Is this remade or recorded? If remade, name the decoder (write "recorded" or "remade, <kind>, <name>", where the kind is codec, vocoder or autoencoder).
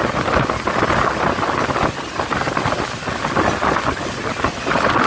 recorded